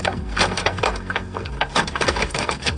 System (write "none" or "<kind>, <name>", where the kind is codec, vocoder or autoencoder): codec, SNAC